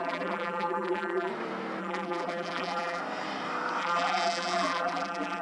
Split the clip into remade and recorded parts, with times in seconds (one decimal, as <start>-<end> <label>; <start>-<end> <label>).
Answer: 0.0-1.3 remade; 1.3-1.8 recorded; 1.8-3.0 remade; 3.0-3.8 recorded; 3.8-5.4 remade